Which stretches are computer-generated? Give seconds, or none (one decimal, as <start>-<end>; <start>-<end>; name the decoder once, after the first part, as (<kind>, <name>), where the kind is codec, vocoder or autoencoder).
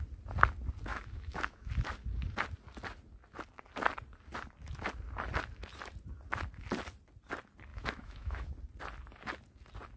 0.9-1.7 (autoencoder, DAC-VAE); 7.7-8.5